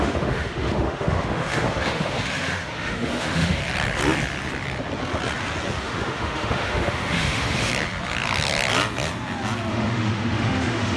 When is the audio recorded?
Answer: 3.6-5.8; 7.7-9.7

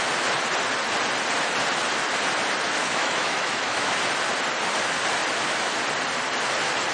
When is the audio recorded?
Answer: 0.0-2.8; 4.0-6.9